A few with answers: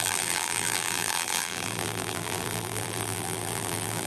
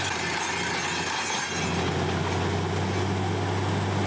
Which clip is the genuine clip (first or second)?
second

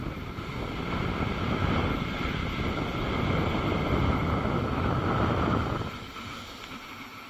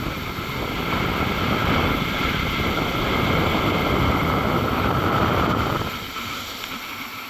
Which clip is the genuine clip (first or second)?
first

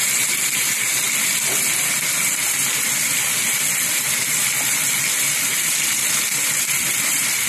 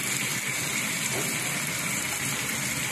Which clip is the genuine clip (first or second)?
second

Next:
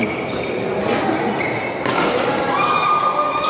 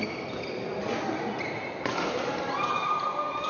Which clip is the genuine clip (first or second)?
first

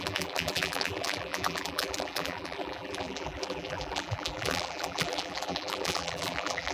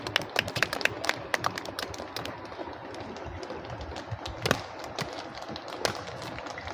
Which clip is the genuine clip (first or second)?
second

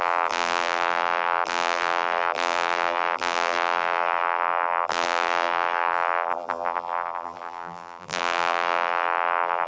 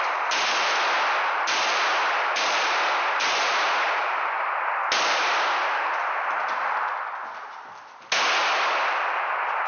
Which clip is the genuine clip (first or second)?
second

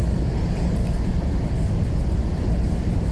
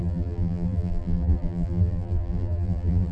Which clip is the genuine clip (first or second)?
first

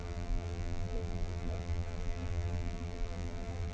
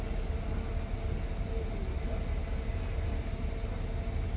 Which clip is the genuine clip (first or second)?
second